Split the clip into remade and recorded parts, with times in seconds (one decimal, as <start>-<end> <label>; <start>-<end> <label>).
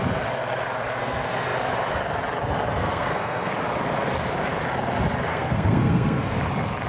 0.0-2.8 recorded; 2.8-3.5 remade; 3.5-5.3 recorded; 5.3-6.4 remade; 6.4-6.9 recorded